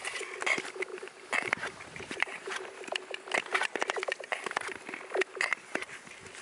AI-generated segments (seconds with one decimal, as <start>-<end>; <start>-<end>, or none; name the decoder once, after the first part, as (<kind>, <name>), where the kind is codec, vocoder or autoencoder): 0.9-2.8 (vocoder, BigVGAN v2)